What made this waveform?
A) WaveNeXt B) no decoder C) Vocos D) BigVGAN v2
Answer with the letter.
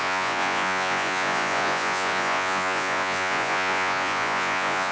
C